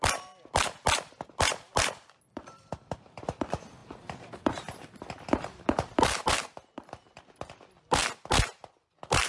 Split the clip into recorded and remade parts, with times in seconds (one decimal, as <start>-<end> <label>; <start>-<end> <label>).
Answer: 0.0-3.8 remade; 3.8-4.9 recorded; 4.9-8.0 remade; 8.0-8.8 recorded; 8.8-9.3 remade